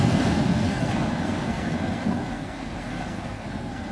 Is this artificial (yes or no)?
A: yes